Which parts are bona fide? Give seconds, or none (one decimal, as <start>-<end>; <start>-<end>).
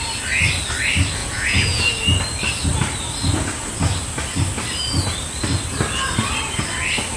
0.0-1.2; 1.9-7.2